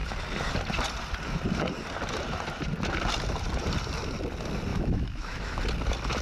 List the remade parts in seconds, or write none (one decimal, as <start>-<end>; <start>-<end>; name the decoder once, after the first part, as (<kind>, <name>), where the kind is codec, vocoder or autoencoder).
4.7-5.6 (autoencoder, DAC-VAE)